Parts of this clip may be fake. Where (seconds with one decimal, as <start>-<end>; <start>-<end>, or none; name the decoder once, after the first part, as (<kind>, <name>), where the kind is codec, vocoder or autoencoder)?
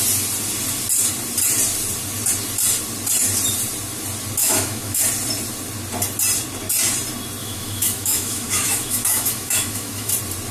4.4-5.0 (autoencoder, DAC-VAE); 7.4-10.1